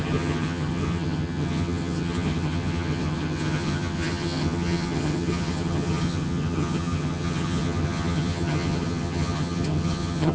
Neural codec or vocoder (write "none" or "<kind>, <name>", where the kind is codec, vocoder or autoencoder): vocoder, HiFi-GAN